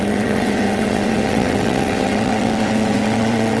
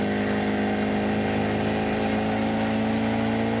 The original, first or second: second